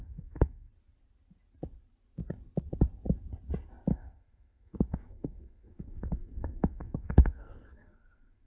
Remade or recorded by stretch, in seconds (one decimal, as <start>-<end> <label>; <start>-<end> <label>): 0.0-0.7 remade; 0.7-3.9 recorded; 3.9-8.5 remade

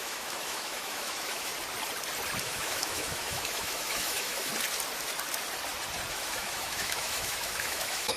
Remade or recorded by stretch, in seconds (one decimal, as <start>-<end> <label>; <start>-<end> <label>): 0.0-1.5 remade; 1.5-2.4 recorded; 2.4-4.5 remade; 4.5-6.1 recorded; 6.1-8.2 remade